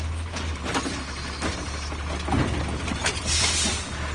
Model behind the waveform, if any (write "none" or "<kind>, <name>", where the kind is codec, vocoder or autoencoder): none